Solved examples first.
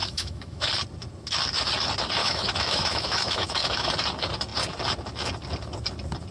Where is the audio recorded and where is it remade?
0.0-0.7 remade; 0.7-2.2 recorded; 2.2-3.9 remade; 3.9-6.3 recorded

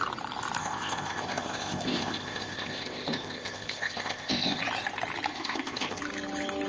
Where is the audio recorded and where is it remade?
0.0-0.6 recorded; 0.6-4.6 remade; 4.6-5.3 recorded; 5.3-6.0 remade; 6.0-6.7 recorded